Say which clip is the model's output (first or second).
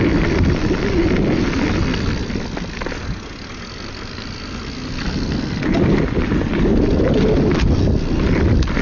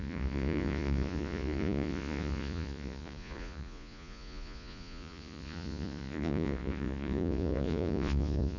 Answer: second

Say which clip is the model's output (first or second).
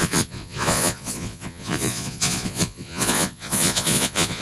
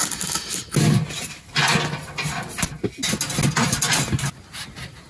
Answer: first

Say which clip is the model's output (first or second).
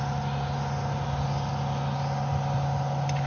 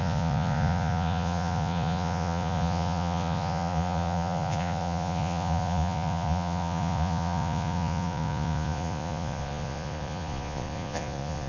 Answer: second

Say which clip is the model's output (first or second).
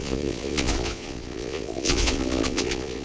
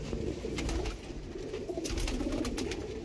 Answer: first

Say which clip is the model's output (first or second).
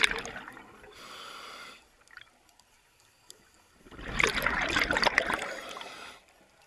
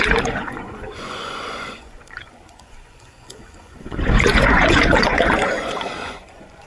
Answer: second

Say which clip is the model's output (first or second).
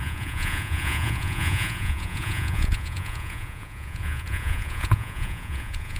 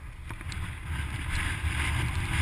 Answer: first